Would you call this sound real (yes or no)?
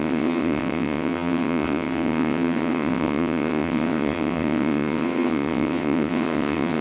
no